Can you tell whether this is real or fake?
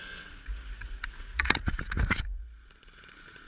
fake